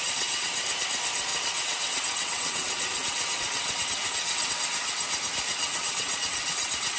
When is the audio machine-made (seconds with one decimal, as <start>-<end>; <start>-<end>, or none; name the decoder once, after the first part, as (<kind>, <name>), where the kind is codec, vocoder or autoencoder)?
0.0-0.6 (vocoder, WaveNeXt); 1.3-4.5; 5.5-7.0